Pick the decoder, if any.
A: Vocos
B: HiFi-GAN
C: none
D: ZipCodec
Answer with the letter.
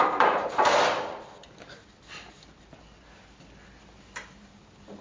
C